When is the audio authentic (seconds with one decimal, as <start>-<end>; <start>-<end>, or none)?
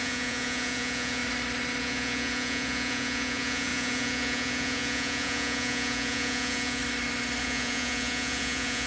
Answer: 1.2-1.8; 6.8-7.4